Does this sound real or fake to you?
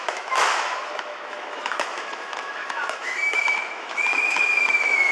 fake